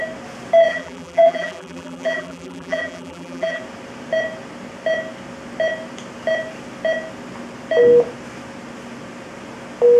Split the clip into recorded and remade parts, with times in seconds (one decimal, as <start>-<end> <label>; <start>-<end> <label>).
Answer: 0.0-0.7 recorded; 0.7-3.6 remade; 3.6-10.0 recorded